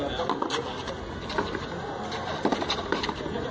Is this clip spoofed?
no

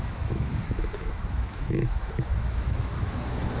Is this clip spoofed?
yes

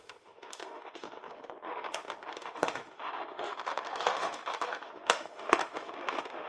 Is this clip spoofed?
yes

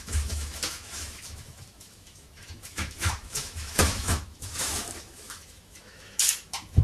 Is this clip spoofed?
yes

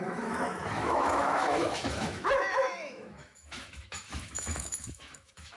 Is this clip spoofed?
yes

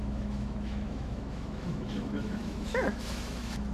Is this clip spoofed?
yes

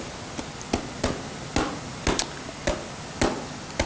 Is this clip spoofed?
no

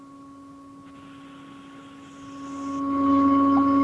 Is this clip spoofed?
no